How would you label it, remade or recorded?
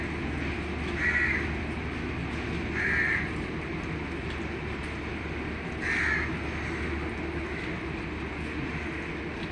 recorded